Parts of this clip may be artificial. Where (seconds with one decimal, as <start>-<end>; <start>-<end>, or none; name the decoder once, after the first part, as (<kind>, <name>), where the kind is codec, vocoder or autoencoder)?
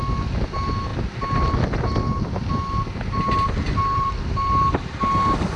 none